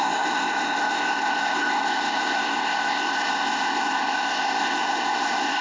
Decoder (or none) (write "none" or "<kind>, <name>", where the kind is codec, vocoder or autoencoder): codec, ZipCodec